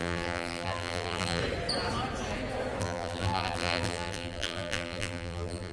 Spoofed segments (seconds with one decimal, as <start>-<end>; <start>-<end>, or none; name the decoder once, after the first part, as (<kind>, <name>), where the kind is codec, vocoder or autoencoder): 0.0-1.4 (vocoder, BigVGAN v2); 2.8-5.7